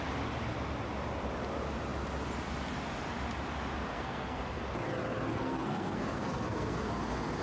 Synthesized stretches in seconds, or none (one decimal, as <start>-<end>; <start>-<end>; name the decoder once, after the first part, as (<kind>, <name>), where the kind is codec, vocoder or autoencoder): 3.9-4.6 (codec, SNAC); 5.3-6.9